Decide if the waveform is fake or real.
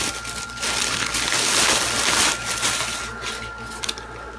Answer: real